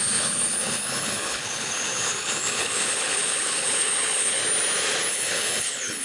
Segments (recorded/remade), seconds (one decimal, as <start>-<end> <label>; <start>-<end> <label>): 0.0-4.4 remade; 4.4-5.1 recorded; 5.1-6.0 remade